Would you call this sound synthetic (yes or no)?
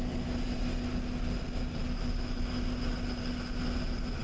no